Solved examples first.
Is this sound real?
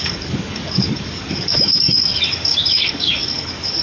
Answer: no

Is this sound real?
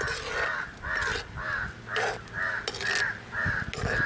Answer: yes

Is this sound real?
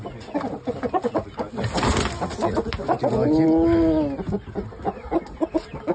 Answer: yes